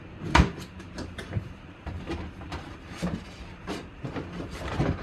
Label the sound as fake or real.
fake